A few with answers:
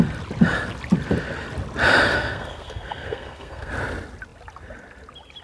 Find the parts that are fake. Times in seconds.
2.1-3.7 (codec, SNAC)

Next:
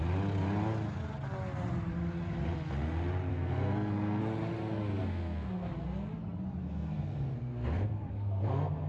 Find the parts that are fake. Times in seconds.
3.3-4.2 (codec, SNAC); 5.0-5.7; 6.6-8.9

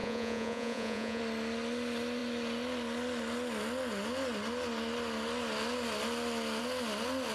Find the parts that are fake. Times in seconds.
0.0-1.2 (vocoder, Vocos)

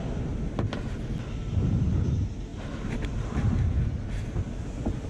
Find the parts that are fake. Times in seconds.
none

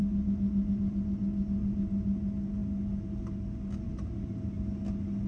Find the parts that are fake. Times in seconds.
none

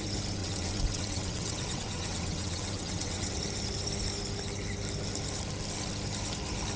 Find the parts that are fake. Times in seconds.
0.4-3.3 (vocoder, WaveNeXt)

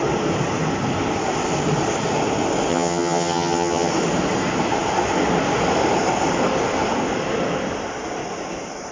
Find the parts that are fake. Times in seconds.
2.7-3.9 (vocoder, HiFi-GAN)